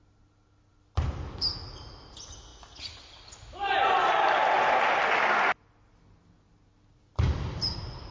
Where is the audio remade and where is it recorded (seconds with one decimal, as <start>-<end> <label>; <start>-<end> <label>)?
0.0-8.1 recorded